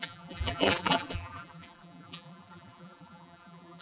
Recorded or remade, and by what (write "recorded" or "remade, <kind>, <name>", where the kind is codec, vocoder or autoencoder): remade, vocoder, BigVGAN v2